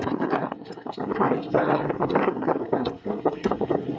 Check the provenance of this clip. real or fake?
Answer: fake